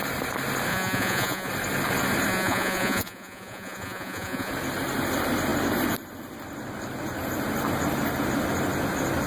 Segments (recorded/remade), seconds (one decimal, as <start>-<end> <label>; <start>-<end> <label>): 0.0-0.7 recorded; 0.7-1.5 remade; 1.5-2.3 recorded; 2.3-4.5 remade; 4.5-9.3 recorded